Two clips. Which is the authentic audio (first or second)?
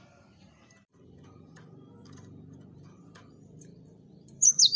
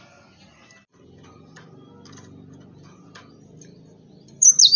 second